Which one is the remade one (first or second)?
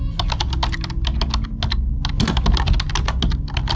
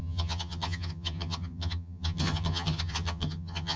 second